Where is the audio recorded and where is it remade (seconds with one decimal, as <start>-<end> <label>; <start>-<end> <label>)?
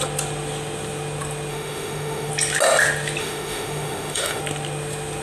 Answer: 0.0-1.5 recorded; 1.5-2.3 remade; 2.3-3.2 recorded; 3.2-4.4 remade; 4.4-5.2 recorded